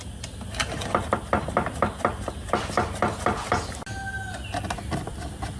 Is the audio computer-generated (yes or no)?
no